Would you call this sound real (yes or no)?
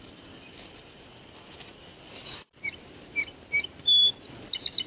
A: yes